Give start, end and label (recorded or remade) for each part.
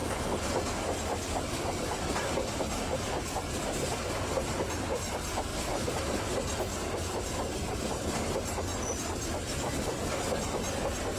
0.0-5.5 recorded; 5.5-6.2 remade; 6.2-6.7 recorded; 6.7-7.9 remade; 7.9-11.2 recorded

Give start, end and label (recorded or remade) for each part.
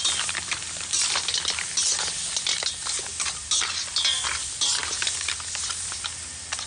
0.0-6.7 recorded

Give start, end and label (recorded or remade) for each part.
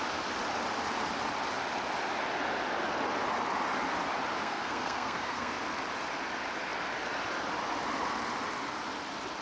0.0-4.4 recorded; 4.4-5.5 remade; 5.5-9.4 recorded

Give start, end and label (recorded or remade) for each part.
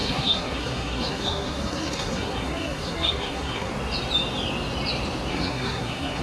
0.0-3.7 remade; 3.7-5.3 recorded; 5.3-6.2 remade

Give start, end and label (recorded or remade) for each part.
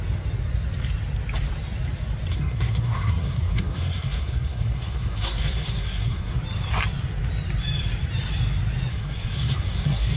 0.0-2.3 recorded; 2.3-6.4 remade; 6.4-8.9 recorded; 8.9-10.2 remade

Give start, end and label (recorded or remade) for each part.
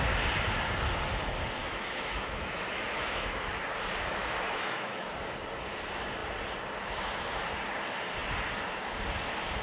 0.0-1.6 recorded; 1.6-3.4 remade; 3.4-4.2 recorded; 4.2-5.0 remade; 5.0-9.6 recorded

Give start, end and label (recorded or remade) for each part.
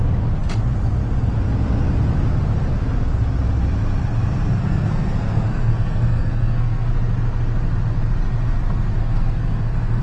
0.0-4.6 recorded; 4.6-6.9 remade; 6.9-9.0 recorded; 9.0-10.0 remade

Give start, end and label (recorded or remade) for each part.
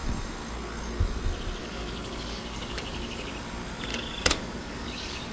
0.0-1.6 recorded; 1.6-3.3 remade; 3.3-3.9 recorded; 3.9-5.3 remade